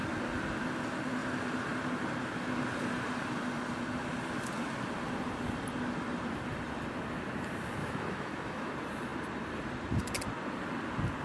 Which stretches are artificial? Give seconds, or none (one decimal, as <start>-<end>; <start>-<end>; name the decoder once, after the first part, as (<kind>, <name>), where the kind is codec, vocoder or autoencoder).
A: 7.8-8.7 (autoencoder, DAC-VAE)